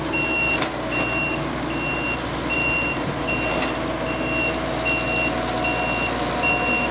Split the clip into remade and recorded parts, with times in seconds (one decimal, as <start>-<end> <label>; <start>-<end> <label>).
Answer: 0.0-1.9 recorded; 1.9-3.1 remade; 3.1-6.9 recorded